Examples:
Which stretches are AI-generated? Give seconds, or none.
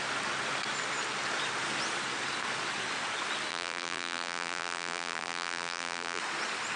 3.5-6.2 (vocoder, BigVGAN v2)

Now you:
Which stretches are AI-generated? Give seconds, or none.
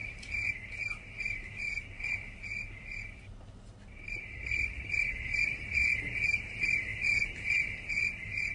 none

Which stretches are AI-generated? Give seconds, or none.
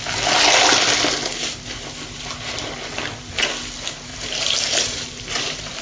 4.1-5.8 (vocoder, BigVGAN v2)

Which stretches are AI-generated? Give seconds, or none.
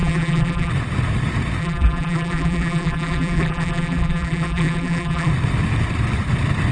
0.0-0.7 (vocoder, BigVGAN v2); 1.6-5.3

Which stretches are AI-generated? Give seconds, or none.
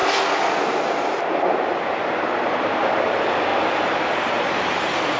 0.6-5.2 (vocoder, BigVGAN v2)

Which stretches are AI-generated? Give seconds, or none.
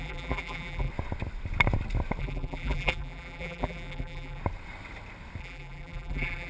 0.0-0.9 (vocoder, BigVGAN v2); 2.2-4.4; 5.4-6.5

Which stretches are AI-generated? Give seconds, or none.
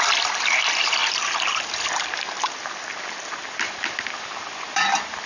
0.0-5.3 (vocoder, BigVGAN v2)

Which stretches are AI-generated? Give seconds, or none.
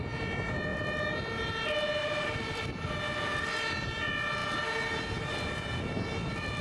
2.0-2.9 (vocoder, BigVGAN v2)